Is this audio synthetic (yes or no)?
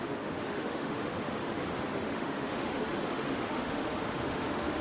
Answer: yes